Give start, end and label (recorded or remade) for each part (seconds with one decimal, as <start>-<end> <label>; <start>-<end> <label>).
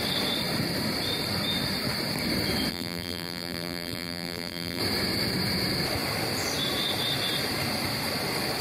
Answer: 0.0-2.7 recorded; 2.7-4.8 remade; 4.8-8.6 recorded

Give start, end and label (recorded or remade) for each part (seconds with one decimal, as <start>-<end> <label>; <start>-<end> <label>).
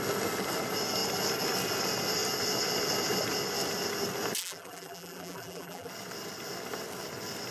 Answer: 0.0-4.4 recorded; 4.4-5.9 remade; 5.9-7.5 recorded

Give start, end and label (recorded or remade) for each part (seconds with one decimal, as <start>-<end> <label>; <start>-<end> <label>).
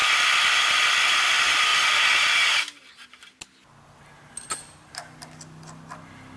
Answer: 0.0-1.7 recorded; 1.7-2.6 remade; 2.6-6.4 recorded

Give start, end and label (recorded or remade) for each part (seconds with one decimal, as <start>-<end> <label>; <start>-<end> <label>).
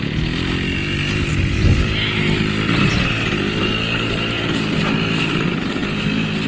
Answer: 0.0-6.5 recorded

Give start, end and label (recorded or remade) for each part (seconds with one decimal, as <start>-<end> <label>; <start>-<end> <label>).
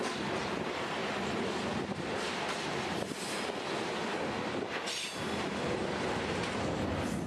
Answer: 0.0-7.3 recorded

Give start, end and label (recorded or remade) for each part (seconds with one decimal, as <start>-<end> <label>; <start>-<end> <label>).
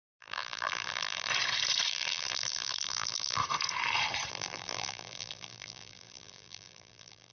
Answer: 0.0-1.3 remade; 1.3-1.9 recorded; 1.9-3.4 remade; 3.4-4.3 recorded; 4.3-7.3 remade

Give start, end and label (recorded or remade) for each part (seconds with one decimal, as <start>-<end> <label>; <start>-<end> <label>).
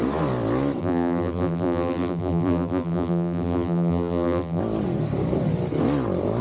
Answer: 0.0-0.8 recorded; 0.8-4.6 remade; 4.6-6.4 recorded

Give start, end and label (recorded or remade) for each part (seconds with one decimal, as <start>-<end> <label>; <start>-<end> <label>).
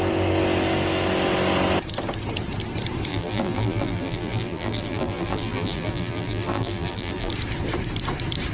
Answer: 0.0-3.1 recorded; 3.1-7.3 remade; 7.3-8.5 recorded